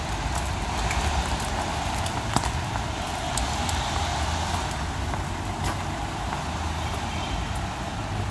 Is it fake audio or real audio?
real